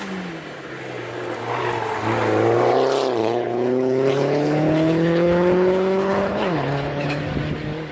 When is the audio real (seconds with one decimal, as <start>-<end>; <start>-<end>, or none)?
0.0-3.2; 7.2-7.9